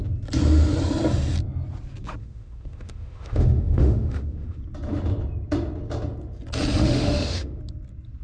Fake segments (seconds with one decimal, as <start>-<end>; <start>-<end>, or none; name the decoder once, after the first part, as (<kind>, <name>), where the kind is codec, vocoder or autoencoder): 2.2-4.6 (autoencoder, DAC-VAE); 6.8-7.6